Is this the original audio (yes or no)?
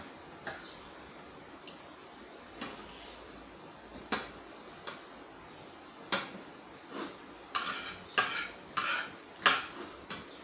yes